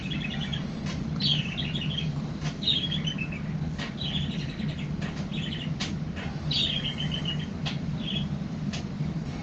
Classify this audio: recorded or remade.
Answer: recorded